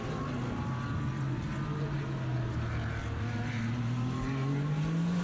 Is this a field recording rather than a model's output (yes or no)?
yes